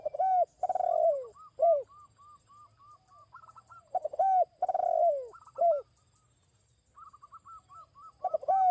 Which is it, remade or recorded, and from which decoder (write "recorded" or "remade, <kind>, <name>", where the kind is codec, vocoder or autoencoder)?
recorded